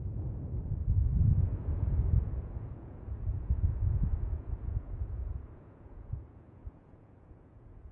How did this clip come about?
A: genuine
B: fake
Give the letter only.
B